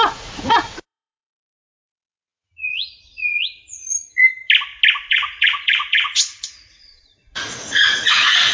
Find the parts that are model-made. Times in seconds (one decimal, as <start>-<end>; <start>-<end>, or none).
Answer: 0.0-4.2; 5.1-8.5

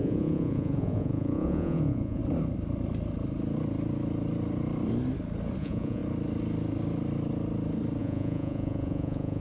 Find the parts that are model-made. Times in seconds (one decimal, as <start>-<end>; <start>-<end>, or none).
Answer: 0.0-2.2; 5.6-6.0; 8.0-9.4

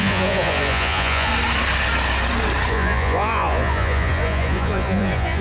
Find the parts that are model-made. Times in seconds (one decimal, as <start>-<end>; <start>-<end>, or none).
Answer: 0.0-1.3; 2.7-5.4